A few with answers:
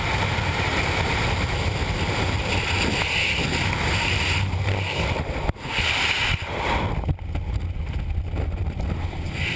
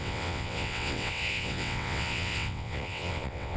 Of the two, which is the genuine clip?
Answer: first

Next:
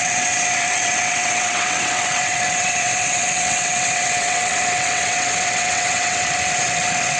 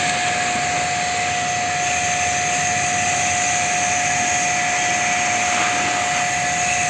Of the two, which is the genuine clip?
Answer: second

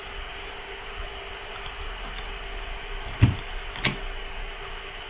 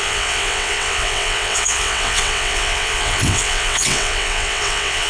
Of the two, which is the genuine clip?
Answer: first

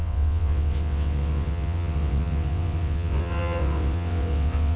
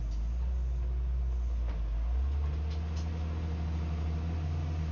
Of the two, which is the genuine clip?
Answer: second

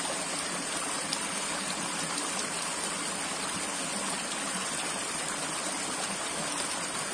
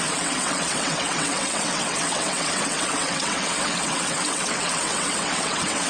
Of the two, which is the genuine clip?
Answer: first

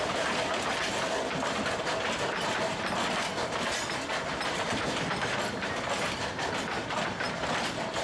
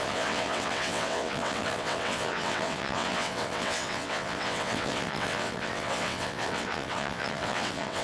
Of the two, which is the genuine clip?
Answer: first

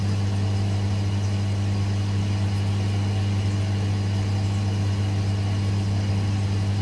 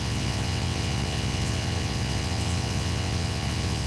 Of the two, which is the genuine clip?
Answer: first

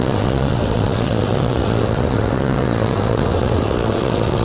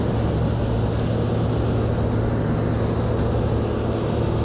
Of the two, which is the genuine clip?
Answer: second